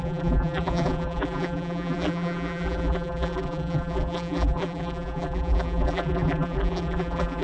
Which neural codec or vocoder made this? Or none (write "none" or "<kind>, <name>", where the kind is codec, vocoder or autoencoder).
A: vocoder, BigVGAN v2